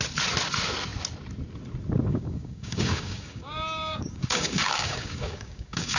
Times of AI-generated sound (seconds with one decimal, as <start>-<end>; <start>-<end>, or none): 2.1-6.0